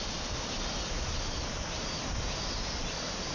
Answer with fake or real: real